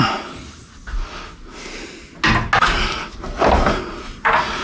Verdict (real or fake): real